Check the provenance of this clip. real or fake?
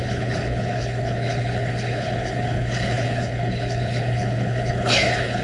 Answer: fake